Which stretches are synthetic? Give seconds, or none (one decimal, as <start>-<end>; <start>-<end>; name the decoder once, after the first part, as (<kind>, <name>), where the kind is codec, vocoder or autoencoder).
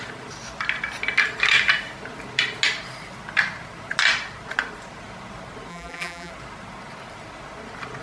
5.7-6.3 (vocoder, BigVGAN v2)